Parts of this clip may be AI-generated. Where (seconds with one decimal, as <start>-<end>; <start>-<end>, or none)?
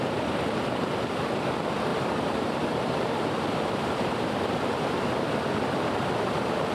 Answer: 1.9-4.1